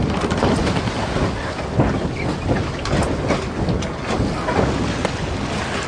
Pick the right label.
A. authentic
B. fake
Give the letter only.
A